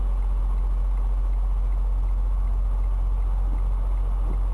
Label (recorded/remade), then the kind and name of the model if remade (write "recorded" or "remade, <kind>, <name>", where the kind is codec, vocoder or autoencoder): recorded